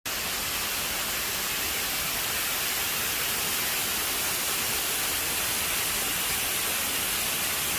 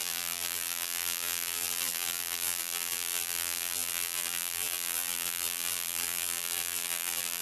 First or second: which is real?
first